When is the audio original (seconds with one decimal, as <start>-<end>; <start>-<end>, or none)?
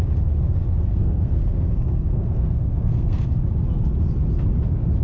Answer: 0.0-0.9; 3.3-5.0